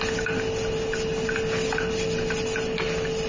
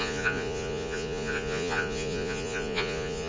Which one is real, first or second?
first